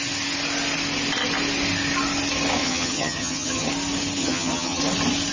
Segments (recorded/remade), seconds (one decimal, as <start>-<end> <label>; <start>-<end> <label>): 0.0-2.6 recorded; 2.6-3.7 remade; 3.7-4.2 recorded; 4.2-4.8 remade; 4.8-5.3 recorded